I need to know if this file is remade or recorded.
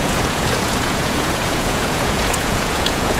remade